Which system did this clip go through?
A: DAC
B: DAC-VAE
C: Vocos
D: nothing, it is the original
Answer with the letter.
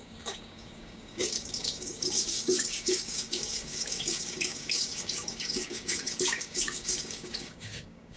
A